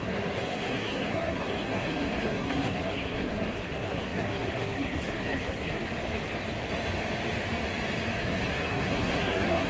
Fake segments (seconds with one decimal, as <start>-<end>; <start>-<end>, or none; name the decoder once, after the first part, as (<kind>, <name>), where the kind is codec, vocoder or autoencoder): 0.0-5.8 (codec, SNAC); 8.2-9.7